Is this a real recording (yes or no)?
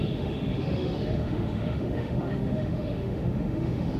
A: no